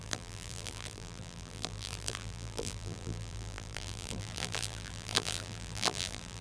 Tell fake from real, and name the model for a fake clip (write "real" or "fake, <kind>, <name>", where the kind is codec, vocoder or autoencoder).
fake, vocoder, BigVGAN v2